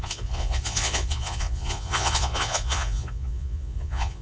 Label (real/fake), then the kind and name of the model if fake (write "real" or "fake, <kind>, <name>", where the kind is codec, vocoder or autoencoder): fake, vocoder, Vocos